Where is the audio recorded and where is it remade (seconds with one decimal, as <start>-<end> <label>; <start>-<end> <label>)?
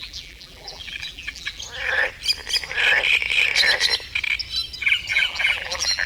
0.0-1.6 remade; 1.6-5.1 recorded; 5.1-6.1 remade